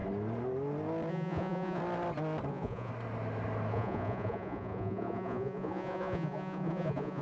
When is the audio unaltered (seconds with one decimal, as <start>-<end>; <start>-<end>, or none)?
0.0-1.1; 1.8-2.5; 2.9-3.7